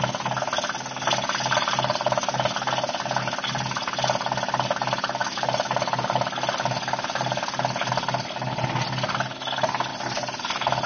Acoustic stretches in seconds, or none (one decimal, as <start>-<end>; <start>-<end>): 0.0-10.9